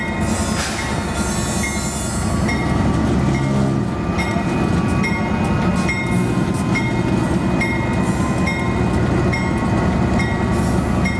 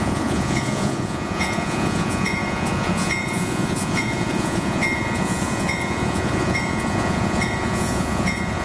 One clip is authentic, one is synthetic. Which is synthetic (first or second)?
second